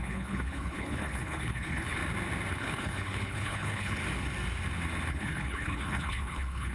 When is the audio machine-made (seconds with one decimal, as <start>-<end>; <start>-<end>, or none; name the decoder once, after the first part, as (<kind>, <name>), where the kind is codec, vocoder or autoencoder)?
0.0-2.0 (codec, HILCodec); 2.5-4.0; 5.1-6.7